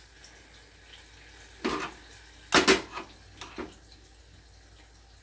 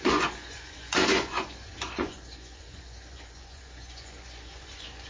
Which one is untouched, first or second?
first